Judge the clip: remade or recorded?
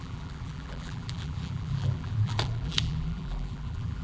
remade